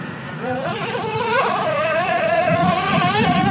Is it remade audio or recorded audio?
remade